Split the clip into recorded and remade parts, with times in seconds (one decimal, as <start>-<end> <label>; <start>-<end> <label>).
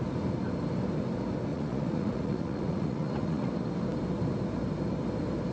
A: 0.0-1.5 recorded; 1.5-3.5 remade; 3.5-5.5 recorded